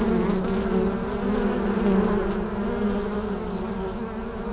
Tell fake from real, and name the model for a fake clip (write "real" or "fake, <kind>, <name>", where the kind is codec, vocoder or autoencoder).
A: real